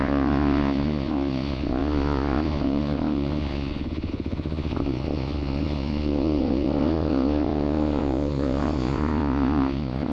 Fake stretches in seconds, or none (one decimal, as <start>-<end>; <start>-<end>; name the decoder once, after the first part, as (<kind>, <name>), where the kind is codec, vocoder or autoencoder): 0.0-10.1 (vocoder, Vocos)